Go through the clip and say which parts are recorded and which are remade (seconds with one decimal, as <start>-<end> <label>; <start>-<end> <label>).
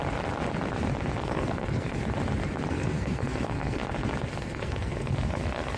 0.0-1.2 recorded; 1.2-2.0 remade; 2.0-2.7 recorded; 2.7-3.8 remade; 3.8-4.3 recorded; 4.3-5.8 remade